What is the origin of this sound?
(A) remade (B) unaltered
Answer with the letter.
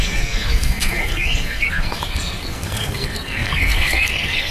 A